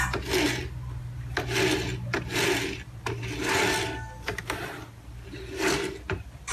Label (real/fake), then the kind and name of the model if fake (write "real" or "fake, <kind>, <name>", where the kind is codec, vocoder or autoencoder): real